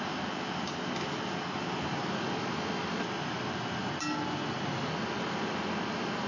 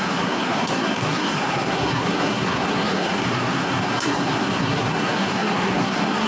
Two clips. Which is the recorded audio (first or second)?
first